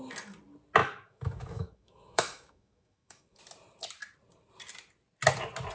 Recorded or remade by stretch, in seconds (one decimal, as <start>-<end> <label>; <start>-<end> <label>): 0.0-0.8 recorded; 0.8-3.4 remade; 3.4-5.7 recorded